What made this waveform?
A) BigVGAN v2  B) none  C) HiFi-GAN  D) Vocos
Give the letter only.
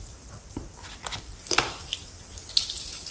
B